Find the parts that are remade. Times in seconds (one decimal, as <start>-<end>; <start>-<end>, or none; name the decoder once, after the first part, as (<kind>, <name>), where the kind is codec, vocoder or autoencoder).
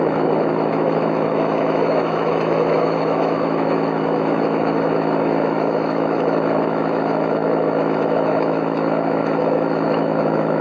0.0-10.6 (autoencoder, DAC-VAE)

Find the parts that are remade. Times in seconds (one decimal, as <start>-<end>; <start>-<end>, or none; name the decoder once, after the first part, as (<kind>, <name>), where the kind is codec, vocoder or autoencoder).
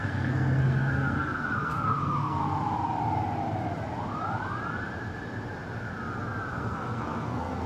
0.0-2.4 (codec, SNAC); 6.5-7.7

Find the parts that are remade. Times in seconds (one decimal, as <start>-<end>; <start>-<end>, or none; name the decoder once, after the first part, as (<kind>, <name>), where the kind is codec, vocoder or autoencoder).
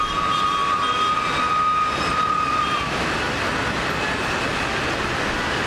none